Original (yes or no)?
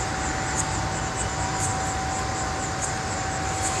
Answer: yes